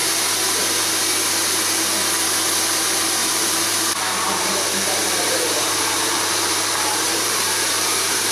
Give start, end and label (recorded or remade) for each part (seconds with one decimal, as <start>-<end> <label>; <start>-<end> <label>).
0.0-3.2 recorded; 3.2-8.3 remade